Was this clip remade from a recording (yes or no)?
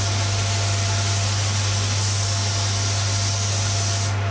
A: no